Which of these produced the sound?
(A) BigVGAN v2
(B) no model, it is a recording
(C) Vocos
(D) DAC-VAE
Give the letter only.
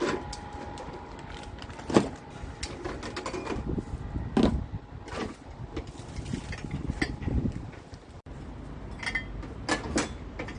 B